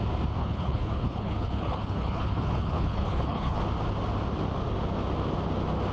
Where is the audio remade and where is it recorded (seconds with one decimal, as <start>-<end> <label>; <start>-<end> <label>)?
0.0-0.4 recorded; 0.4-3.6 remade; 3.6-5.9 recorded